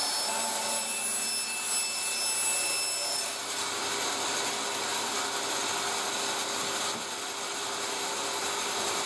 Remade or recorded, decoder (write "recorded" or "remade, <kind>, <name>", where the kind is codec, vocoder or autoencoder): recorded